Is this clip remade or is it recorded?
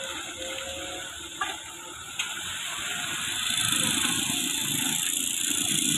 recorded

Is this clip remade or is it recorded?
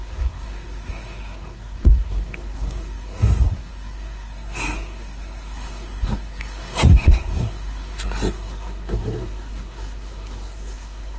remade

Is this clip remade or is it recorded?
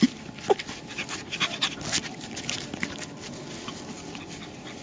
recorded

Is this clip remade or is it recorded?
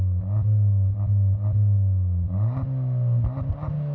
recorded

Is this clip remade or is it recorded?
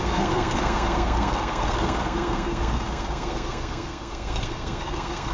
remade